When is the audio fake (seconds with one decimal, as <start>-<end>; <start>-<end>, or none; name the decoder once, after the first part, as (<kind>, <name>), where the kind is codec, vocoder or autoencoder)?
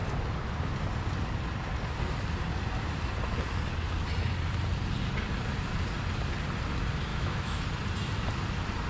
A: 7.1-7.6 (autoencoder, DAC-VAE)